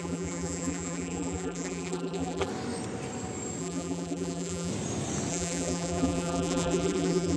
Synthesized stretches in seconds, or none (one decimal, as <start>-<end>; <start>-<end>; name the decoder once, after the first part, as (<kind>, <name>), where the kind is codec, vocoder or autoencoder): 0.0-2.5 (vocoder, BigVGAN v2); 3.6-4.7; 5.3-7.4